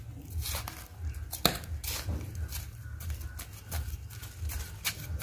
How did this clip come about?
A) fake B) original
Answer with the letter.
B